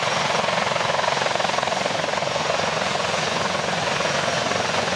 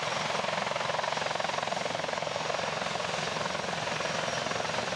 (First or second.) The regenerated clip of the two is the first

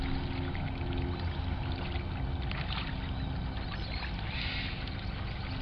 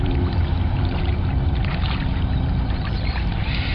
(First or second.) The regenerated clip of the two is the second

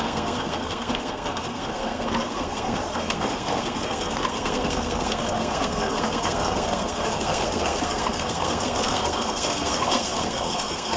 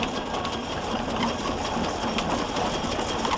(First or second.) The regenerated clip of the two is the first